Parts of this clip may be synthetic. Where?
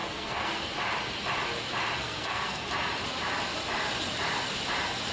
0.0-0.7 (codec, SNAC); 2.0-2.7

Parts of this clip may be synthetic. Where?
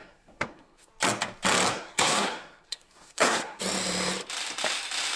0.0-0.9 (codec, SNAC); 1.7-3.6